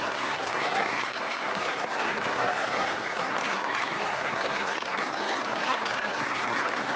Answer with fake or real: fake